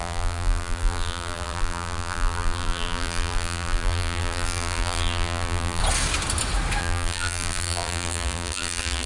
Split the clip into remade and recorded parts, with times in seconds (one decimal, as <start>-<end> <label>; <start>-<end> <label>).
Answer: 0.0-5.8 remade; 5.8-6.8 recorded; 6.8-9.1 remade

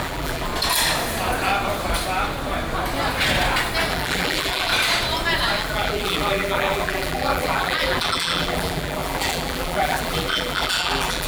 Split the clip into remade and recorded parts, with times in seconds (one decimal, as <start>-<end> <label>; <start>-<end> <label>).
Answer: 0.0-0.5 remade; 0.5-3.9 recorded; 3.9-4.7 remade; 4.7-5.6 recorded; 5.6-11.3 remade

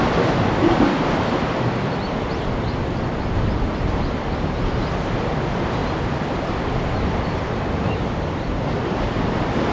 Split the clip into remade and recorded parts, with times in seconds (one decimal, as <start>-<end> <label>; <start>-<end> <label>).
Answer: 0.0-9.7 recorded

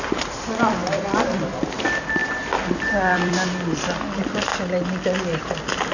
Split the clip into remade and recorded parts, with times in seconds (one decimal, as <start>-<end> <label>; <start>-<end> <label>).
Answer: 0.0-0.8 recorded; 0.8-1.7 remade; 1.7-2.2 recorded; 2.2-3.3 remade; 3.3-5.9 recorded

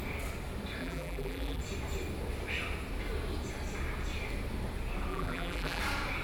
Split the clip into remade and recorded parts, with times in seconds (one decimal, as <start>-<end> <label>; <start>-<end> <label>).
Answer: 0.0-0.8 recorded; 0.8-1.6 remade; 1.6-5.1 recorded; 5.1-5.8 remade; 5.8-6.2 recorded

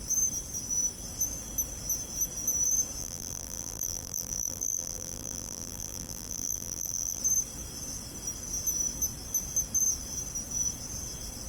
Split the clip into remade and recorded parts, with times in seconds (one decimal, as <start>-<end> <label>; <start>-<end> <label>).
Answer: 0.0-3.0 recorded; 3.0-7.2 remade; 7.2-11.5 recorded